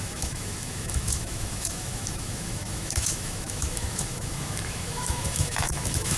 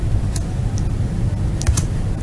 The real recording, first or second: second